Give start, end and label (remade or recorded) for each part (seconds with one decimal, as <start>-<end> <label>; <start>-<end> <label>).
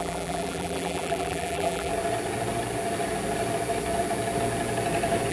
0.0-1.9 remade; 1.9-5.3 recorded